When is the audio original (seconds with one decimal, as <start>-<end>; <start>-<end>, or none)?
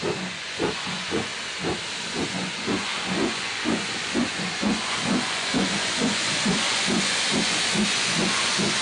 1.3-2.0